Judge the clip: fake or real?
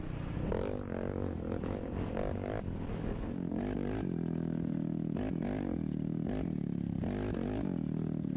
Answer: real